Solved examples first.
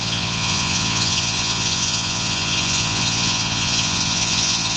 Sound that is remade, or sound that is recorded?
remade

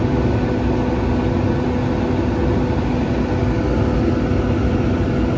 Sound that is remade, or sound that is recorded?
recorded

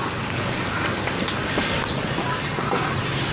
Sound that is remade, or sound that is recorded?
recorded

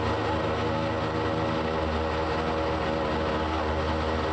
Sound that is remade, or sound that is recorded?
recorded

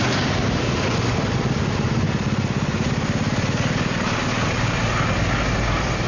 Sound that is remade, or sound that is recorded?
recorded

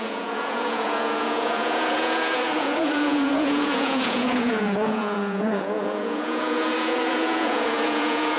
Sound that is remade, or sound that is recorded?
remade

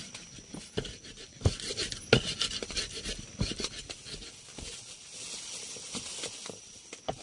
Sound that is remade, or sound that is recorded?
recorded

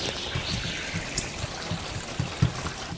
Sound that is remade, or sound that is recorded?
recorded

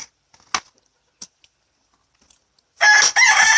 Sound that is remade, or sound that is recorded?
recorded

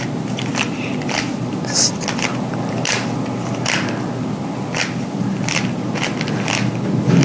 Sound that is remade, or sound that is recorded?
recorded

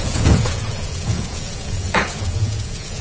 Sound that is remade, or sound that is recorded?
remade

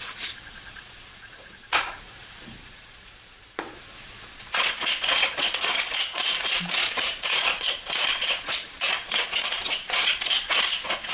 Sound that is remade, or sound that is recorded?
remade